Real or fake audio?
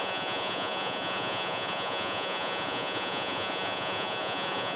fake